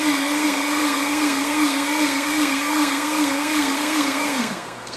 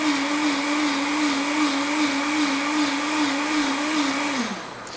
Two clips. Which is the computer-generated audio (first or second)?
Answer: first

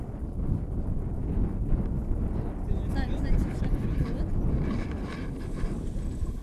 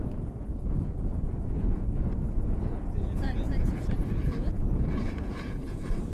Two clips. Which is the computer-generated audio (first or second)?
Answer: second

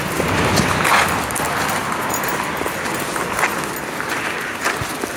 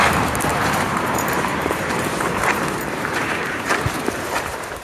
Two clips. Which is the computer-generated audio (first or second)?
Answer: second